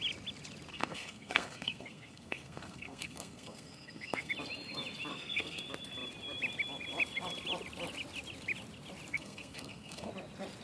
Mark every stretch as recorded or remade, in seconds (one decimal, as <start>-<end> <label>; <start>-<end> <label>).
0.0-0.7 recorded; 0.7-4.3 remade; 4.3-5.1 recorded; 5.1-5.6 remade; 5.6-9.1 recorded; 9.1-10.1 remade; 10.1-10.6 recorded